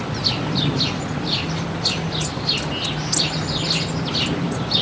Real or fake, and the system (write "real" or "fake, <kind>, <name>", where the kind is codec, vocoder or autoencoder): real